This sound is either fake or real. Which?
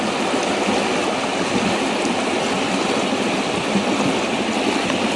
real